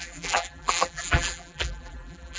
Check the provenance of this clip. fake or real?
fake